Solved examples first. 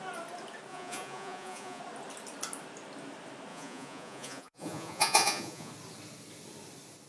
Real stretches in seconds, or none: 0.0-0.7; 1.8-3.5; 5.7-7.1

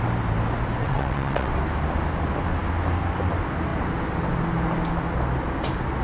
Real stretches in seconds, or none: 0.0-0.8; 1.5-6.0

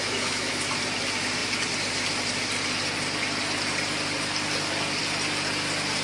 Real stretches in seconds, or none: 0.5-6.0

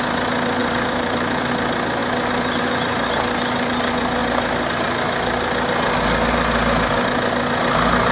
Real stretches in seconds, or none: 0.0-0.6; 1.5-8.1